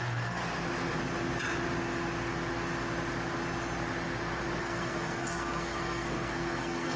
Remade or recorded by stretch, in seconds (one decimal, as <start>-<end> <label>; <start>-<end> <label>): 0.0-0.4 remade; 0.4-4.6 recorded; 4.6-7.0 remade